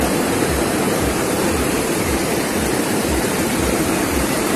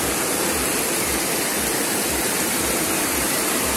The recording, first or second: second